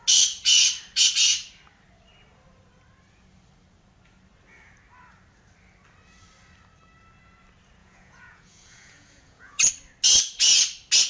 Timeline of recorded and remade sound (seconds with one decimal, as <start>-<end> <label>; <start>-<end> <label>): 0.0-7.8 recorded; 7.8-9.7 remade; 9.7-11.1 recorded